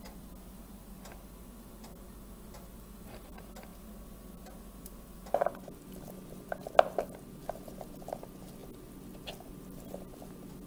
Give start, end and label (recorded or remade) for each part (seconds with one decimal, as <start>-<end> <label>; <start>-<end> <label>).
0.0-10.7 recorded